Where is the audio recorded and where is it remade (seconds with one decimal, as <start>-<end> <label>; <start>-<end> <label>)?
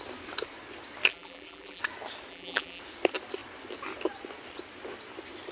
0.0-1.1 recorded; 1.1-1.8 remade; 1.8-2.3 recorded; 2.3-2.8 remade; 2.8-5.5 recorded